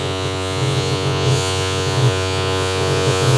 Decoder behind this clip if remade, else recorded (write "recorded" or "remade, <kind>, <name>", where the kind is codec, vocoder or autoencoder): remade, vocoder, Vocos